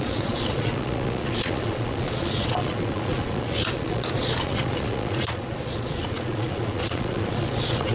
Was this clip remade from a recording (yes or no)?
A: yes